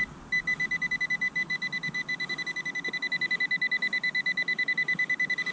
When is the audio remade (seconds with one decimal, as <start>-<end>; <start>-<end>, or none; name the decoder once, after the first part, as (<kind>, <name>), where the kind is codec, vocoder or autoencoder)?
none